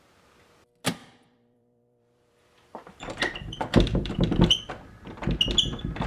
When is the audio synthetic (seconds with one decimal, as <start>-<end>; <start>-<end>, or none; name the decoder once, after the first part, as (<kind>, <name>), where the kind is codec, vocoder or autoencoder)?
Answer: 1.0-4.7 (vocoder, BigVGAN v2)